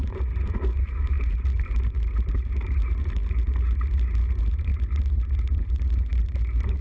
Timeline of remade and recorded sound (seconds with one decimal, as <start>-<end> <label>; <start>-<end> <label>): 0.0-4.7 remade; 4.7-5.6 recorded; 5.6-6.8 remade